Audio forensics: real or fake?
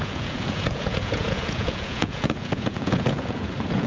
fake